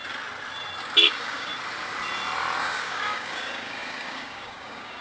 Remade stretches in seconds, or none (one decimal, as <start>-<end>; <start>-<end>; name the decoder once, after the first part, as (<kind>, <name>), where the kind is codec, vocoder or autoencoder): 1.0-1.5 (codec, DAC); 2.6-5.0